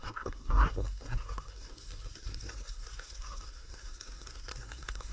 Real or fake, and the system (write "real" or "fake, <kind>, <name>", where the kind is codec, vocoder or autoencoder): fake, codec, SNAC